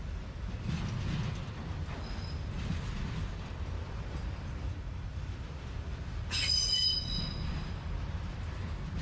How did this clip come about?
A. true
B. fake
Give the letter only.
A